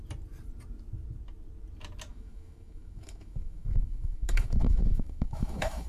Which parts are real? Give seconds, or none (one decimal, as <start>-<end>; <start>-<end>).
0.0-2.1